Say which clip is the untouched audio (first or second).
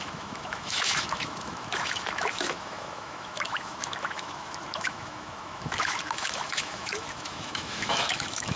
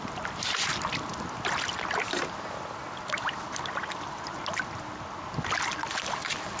second